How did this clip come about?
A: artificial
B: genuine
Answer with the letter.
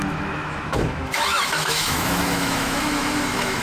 A